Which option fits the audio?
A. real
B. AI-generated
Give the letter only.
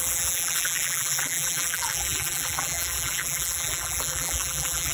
B